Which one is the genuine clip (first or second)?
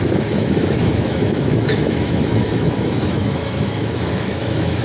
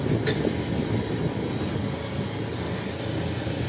second